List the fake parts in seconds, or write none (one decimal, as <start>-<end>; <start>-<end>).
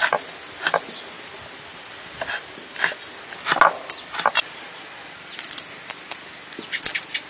none